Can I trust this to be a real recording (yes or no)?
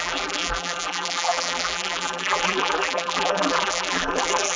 no